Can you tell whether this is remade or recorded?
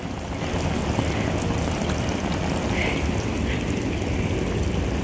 recorded